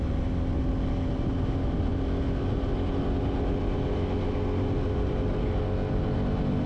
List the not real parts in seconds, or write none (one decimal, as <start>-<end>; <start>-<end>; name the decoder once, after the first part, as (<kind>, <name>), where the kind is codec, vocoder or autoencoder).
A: none